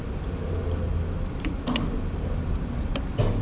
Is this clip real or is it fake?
real